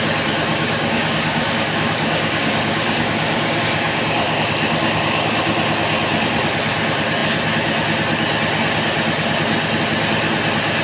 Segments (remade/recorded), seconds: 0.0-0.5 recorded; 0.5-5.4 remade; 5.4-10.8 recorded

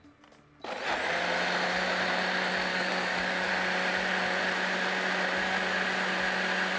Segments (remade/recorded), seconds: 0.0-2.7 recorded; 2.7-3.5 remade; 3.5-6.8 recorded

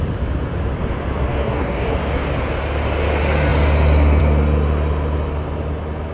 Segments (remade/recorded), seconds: 0.0-1.3 recorded; 1.3-1.9 remade; 1.9-6.1 recorded